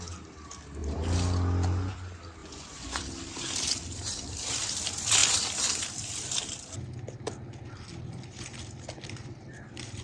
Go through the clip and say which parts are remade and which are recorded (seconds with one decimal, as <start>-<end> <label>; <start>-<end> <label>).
0.0-2.4 recorded; 2.4-3.0 remade; 3.0-10.0 recorded